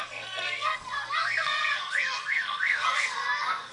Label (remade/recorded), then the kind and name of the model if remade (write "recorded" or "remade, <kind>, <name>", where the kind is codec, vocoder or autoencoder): remade, codec, SNAC